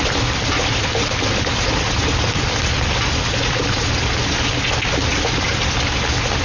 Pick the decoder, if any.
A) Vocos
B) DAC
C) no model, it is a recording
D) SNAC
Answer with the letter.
C